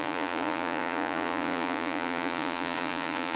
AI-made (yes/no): yes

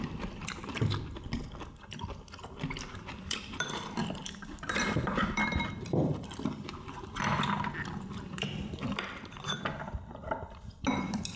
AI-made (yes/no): yes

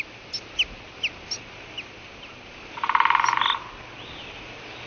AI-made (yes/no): no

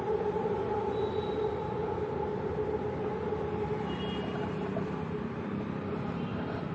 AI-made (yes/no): no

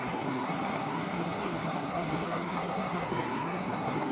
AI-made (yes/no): yes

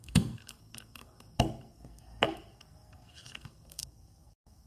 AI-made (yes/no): yes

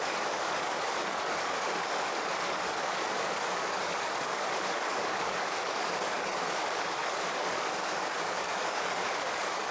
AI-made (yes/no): yes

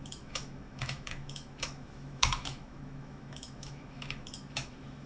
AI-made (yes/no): yes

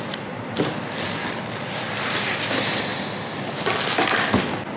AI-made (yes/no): no